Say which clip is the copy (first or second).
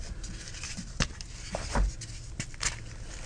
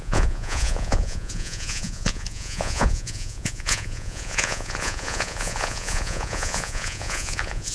second